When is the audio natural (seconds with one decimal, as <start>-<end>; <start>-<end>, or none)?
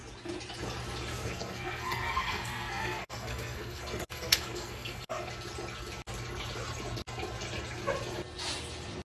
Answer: 0.0-1.1; 5.3-9.0